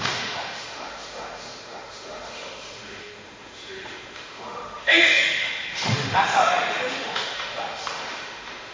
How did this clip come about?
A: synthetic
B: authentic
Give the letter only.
A